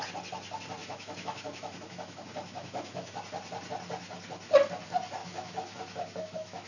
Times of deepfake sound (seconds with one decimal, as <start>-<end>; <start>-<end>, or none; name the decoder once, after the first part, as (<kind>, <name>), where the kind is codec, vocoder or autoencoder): 0.8-3.2 (autoencoder, DAC-VAE); 5.2-6.7